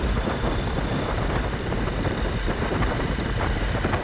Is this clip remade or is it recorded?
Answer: remade